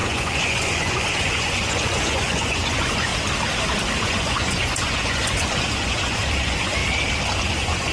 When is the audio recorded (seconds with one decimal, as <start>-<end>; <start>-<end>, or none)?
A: 3.1-4.0; 6.8-7.4